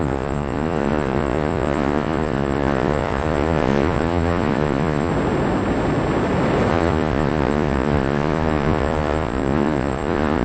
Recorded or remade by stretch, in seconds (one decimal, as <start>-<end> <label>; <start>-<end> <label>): 0.0-5.1 remade; 5.1-6.7 recorded; 6.7-10.4 remade